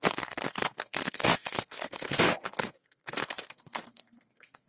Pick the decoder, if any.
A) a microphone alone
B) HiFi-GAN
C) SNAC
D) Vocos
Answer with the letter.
C